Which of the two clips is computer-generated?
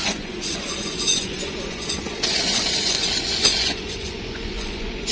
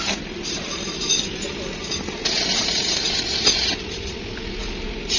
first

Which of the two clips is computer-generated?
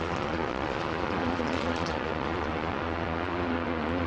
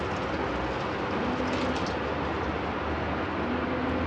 first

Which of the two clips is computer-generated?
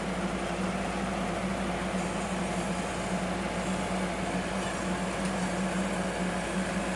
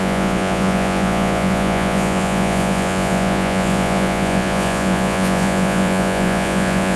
second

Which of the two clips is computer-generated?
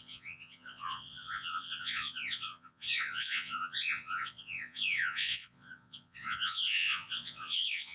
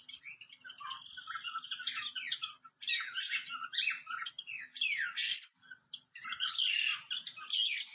first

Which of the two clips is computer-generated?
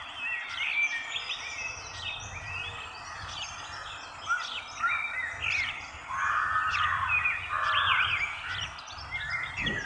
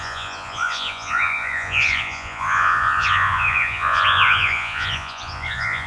second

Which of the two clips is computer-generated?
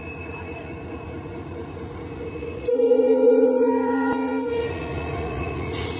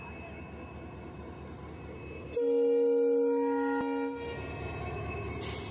first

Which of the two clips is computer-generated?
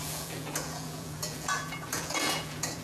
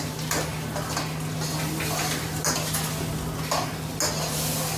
first